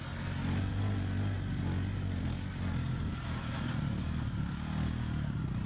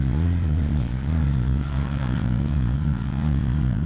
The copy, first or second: second